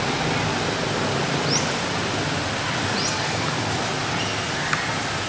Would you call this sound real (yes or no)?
yes